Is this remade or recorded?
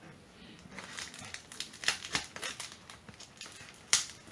recorded